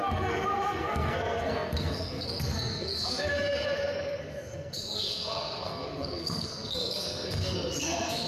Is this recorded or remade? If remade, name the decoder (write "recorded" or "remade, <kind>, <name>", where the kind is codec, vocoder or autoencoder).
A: remade, codec, SNAC